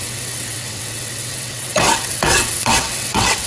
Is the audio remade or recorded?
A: remade